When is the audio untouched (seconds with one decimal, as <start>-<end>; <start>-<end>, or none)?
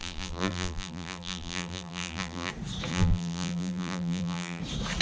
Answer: 2.5-2.9; 4.6-5.0